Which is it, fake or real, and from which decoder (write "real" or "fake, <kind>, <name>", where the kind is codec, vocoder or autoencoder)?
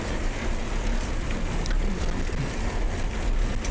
real